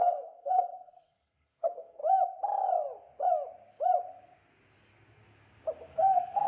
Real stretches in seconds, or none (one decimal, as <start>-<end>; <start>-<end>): 2.0-5.9